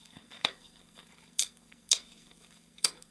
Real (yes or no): no